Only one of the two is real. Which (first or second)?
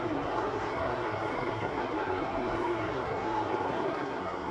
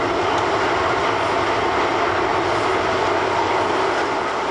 second